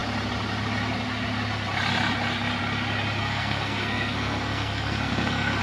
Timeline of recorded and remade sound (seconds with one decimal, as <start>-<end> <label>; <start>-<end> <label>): 0.0-3.2 recorded; 3.2-5.6 remade